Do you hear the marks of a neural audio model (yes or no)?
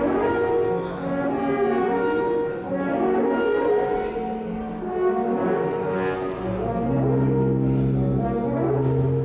no